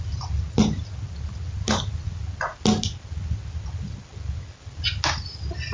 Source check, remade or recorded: recorded